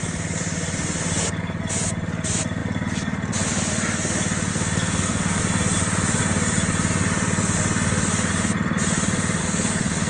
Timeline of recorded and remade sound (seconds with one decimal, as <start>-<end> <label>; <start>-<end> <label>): 0.0-4.5 recorded; 4.5-5.4 remade; 5.4-9.4 recorded; 9.4-10.1 remade